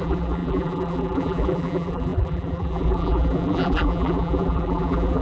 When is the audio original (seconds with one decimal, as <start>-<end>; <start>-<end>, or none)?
none

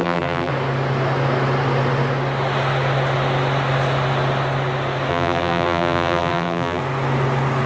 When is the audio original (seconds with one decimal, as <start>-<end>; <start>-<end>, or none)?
0.5-5.1; 6.8-7.7

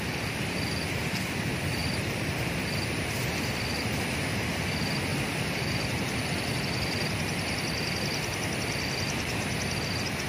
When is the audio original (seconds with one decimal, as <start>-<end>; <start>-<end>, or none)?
0.0-1.8; 4.3-5.1; 5.7-10.3

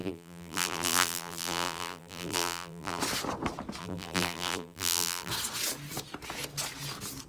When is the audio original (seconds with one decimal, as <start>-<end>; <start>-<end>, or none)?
3.0-3.8; 5.3-7.3

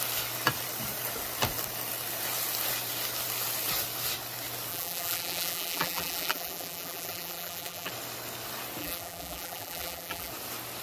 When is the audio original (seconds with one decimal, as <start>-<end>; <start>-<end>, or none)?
0.0-4.7; 7.9-8.8; 10.3-10.8

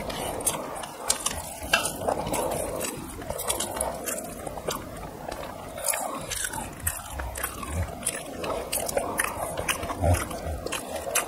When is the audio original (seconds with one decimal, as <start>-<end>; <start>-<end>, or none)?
0.0-11.3